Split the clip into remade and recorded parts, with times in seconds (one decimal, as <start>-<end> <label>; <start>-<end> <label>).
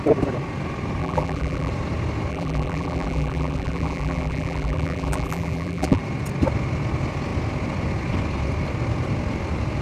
0.0-1.0 recorded; 1.0-1.7 remade; 1.7-2.3 recorded; 2.3-6.0 remade; 6.0-9.8 recorded